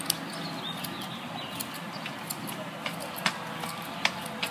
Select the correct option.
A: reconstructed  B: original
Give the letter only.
B